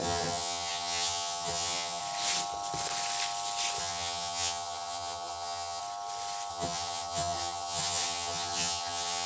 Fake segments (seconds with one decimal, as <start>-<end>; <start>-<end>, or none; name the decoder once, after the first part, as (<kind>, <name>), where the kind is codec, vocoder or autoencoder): 0.0-2.0 (vocoder, HiFi-GAN); 3.8-5.8; 6.5-9.3